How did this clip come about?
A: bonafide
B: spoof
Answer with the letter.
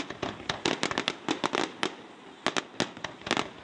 A